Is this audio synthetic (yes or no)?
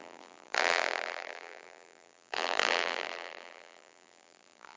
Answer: yes